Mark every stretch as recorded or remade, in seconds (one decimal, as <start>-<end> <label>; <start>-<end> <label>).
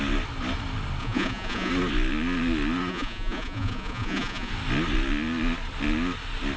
0.0-1.0 recorded; 1.0-1.7 remade; 1.7-2.9 recorded; 2.9-4.5 remade; 4.5-6.6 recorded